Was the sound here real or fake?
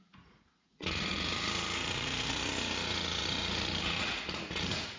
fake